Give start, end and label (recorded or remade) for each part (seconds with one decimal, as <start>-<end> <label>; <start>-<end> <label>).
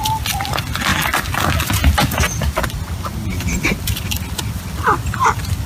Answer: 0.0-5.7 recorded